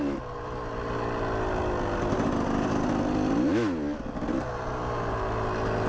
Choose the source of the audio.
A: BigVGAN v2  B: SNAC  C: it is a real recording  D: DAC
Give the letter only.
C